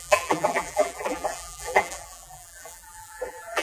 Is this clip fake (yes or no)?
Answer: yes